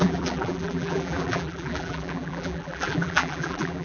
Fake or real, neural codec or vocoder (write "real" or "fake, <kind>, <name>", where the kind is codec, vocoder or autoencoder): fake, vocoder, BigVGAN v2